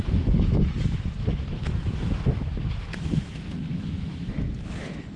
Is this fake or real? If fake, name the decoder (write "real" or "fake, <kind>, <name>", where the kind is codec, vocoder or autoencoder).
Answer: fake, autoencoder, DAC-VAE